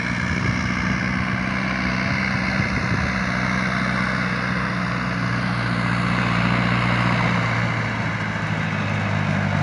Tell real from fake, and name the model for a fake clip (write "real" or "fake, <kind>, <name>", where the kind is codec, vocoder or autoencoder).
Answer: real